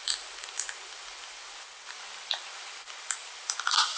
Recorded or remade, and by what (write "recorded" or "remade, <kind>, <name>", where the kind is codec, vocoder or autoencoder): remade, vocoder, BigVGAN v2